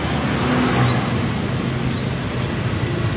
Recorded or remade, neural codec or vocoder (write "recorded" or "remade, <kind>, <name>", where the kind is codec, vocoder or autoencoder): recorded